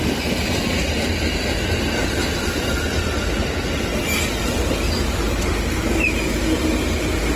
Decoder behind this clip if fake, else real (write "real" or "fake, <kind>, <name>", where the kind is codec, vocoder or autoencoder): real